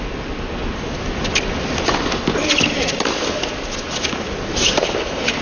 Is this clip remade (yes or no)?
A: no